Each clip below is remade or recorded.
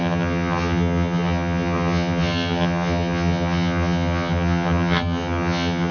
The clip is remade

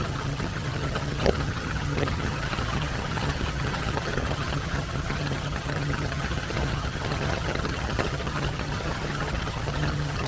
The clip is remade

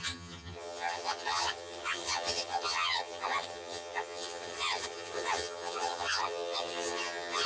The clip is remade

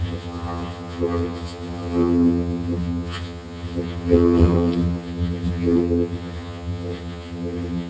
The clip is remade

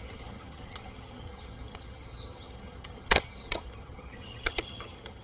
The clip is remade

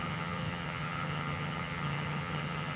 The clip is remade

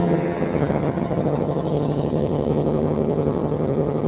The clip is remade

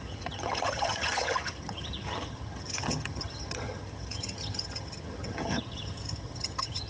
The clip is remade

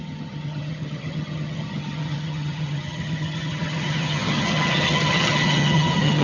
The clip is remade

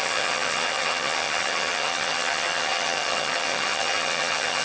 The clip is remade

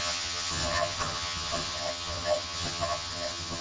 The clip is remade